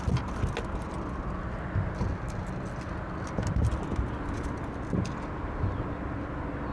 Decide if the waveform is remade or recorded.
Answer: recorded